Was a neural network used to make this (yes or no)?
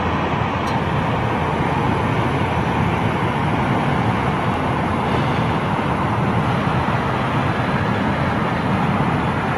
no